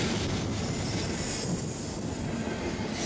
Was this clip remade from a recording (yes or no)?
no